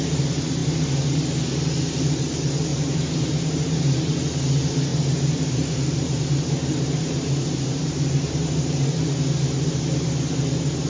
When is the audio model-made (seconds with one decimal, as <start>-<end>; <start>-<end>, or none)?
2.7-4.2; 4.9-9.0